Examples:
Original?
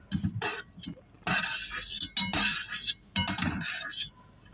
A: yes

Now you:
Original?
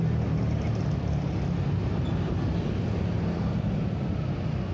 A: yes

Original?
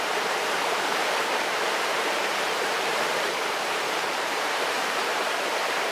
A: no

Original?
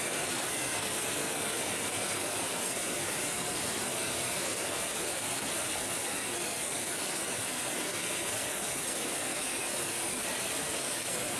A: no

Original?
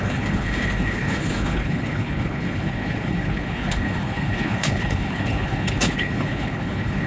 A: no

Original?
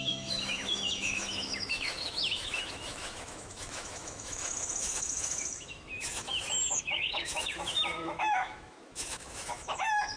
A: no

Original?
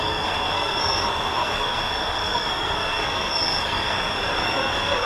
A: no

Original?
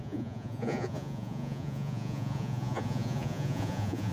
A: no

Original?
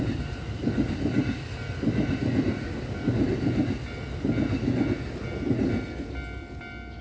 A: yes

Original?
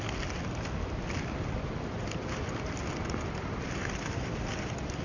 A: yes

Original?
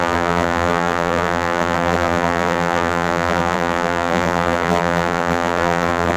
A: no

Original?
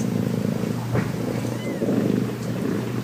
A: no